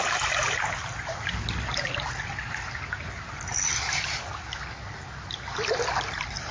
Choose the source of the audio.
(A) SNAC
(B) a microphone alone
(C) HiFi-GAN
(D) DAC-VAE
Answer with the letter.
B